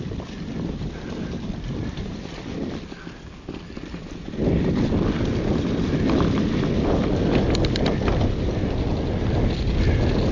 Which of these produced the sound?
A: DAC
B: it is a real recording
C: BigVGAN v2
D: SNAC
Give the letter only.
B